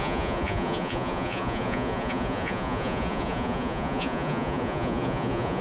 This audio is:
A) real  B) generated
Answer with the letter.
B